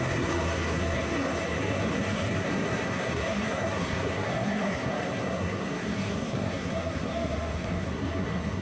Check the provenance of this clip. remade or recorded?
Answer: remade